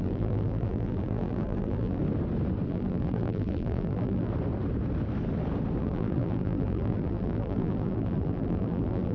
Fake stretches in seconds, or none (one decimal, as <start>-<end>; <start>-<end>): 0.0-2.0; 2.7-4.3; 5.8-9.1